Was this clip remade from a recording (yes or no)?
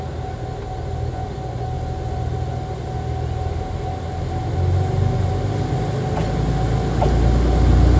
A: no